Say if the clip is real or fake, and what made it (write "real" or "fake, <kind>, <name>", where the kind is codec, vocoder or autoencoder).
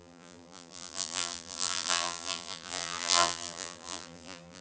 fake, vocoder, BigVGAN v2